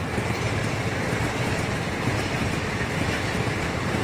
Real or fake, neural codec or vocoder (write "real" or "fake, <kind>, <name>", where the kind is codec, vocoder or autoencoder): real